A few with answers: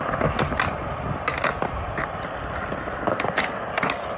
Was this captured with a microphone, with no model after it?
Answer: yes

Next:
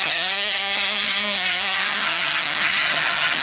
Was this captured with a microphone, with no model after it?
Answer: no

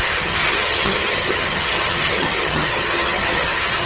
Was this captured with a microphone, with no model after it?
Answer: no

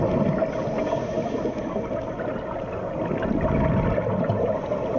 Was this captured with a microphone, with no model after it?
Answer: yes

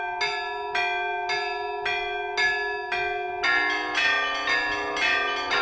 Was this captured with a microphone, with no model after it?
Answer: yes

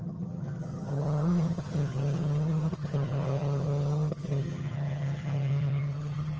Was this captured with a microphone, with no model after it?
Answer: no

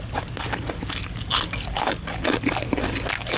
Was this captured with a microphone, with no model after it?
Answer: yes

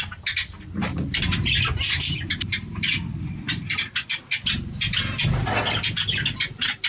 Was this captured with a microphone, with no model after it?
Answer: yes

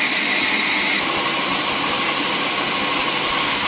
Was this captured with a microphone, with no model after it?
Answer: yes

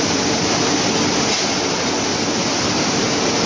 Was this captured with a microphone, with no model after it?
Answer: yes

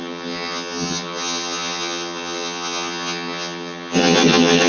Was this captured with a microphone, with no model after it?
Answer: no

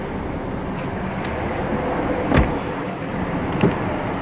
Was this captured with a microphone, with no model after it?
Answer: yes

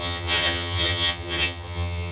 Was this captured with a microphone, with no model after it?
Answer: no